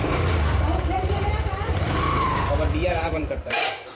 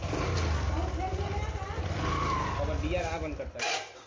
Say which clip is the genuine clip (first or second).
second